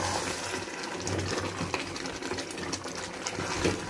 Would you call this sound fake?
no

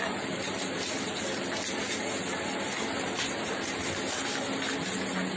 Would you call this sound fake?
no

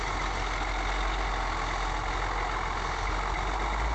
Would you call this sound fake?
no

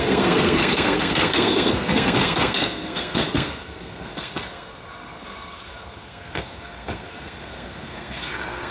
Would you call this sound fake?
yes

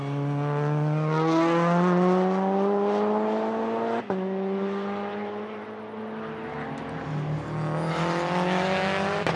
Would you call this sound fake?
no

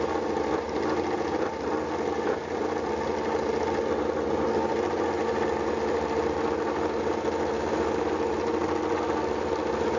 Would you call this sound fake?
no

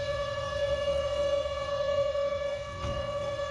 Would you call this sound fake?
yes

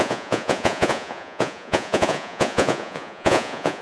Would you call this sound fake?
yes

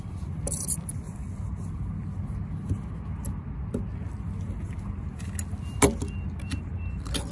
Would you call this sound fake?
no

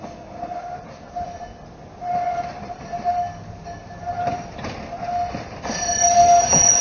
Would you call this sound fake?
no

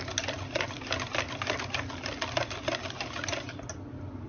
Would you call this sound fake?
no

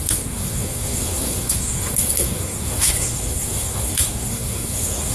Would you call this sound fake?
yes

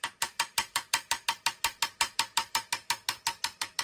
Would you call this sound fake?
yes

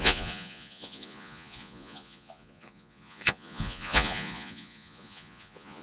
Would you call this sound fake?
yes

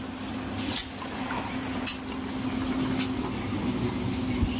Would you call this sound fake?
no